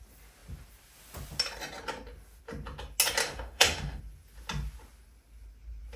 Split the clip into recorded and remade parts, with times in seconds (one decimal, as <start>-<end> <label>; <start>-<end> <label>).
0.0-3.2 recorded; 3.2-4.0 remade; 4.0-6.0 recorded